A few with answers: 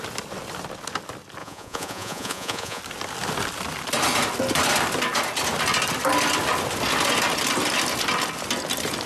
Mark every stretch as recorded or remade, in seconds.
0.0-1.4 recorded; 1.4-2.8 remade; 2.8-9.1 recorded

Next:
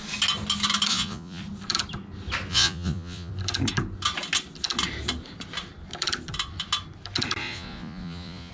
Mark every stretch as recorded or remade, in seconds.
0.0-0.9 recorded; 0.9-1.4 remade; 1.4-2.5 recorded; 2.5-3.3 remade; 3.3-7.4 recorded; 7.4-8.5 remade